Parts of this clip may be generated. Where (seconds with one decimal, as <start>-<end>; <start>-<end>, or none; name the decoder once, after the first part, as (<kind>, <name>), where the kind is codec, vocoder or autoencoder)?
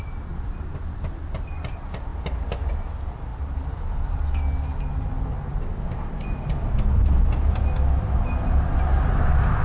none